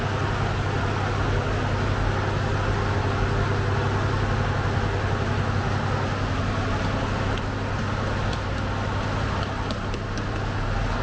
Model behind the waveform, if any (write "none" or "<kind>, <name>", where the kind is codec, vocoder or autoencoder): none